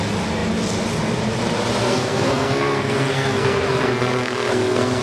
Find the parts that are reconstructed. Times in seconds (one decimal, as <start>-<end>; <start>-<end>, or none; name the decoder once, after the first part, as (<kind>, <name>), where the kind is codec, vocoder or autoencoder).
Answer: 1.8-5.0 (codec, SNAC)